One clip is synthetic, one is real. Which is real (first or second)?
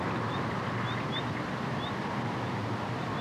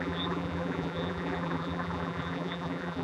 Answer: first